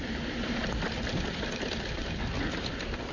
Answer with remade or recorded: recorded